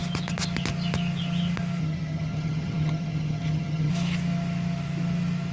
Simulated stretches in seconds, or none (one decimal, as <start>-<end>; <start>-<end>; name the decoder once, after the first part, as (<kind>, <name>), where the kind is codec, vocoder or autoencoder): 1.8-3.9 (vocoder, HiFi-GAN)